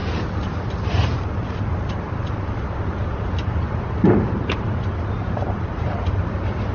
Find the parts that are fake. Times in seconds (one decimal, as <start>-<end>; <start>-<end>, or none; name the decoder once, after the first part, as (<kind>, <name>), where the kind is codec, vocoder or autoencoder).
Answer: 0.0-6.7 (vocoder, BigVGAN v2)

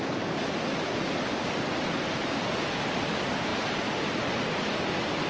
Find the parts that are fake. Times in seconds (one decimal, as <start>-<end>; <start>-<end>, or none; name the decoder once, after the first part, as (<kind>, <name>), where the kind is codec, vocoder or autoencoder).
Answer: none

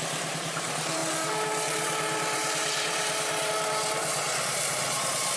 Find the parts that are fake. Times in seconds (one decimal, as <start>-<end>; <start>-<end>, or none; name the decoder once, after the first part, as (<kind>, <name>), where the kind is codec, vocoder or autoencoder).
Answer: 0.0-5.4 (vocoder, BigVGAN v2)

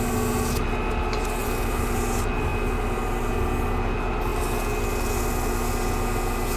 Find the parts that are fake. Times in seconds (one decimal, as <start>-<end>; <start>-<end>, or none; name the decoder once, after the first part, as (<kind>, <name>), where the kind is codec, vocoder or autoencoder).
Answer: 1.4-2.0 (vocoder, BigVGAN v2); 2.5-3.3

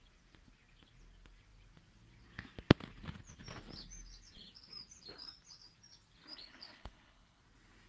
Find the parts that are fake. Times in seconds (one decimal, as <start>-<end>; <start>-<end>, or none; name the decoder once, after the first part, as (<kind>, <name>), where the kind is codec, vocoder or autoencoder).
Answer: 6.3-7.4 (codec, HILCodec)

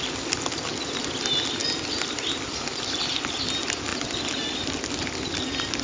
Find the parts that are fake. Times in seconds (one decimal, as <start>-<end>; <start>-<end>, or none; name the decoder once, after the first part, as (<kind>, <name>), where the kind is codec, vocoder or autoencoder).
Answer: none

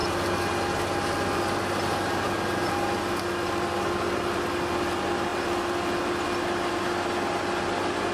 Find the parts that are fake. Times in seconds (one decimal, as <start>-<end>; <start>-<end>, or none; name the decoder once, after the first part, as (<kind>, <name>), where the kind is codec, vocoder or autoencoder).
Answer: none

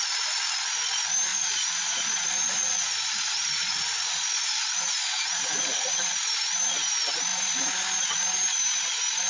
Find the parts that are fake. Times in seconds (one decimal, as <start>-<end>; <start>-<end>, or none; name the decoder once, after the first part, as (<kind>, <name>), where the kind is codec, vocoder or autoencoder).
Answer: 1.3-6.1 (vocoder, Vocos)